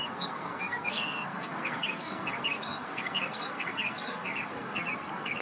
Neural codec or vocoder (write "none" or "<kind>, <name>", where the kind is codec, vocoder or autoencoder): codec, SNAC